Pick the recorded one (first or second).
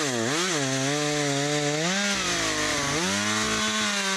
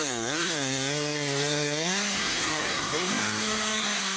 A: first